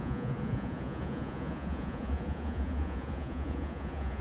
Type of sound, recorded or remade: remade